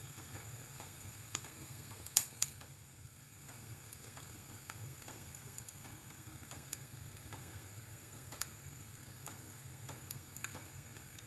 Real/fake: fake